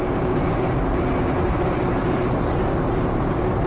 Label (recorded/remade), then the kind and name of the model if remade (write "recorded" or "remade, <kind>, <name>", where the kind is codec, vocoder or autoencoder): remade, vocoder, BigVGAN v2